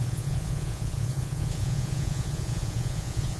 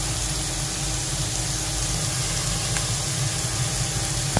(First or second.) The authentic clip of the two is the second